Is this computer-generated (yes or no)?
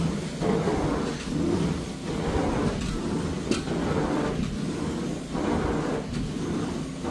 no